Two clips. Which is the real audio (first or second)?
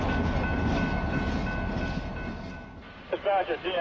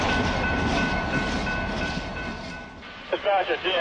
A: first